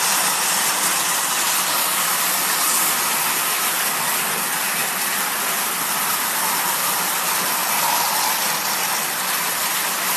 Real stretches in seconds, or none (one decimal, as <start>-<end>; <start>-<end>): 7.6-9.5